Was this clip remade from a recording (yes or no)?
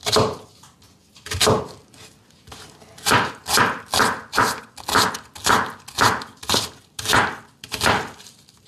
no